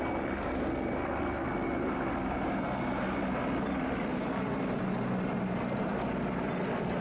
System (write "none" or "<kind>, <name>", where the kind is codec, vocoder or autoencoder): none